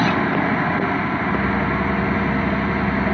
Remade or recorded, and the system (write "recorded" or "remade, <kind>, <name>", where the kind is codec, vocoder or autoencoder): recorded